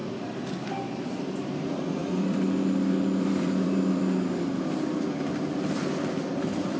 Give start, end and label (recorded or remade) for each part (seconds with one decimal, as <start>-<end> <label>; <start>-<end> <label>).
0.0-2.0 recorded; 2.0-4.0 remade; 4.0-6.8 recorded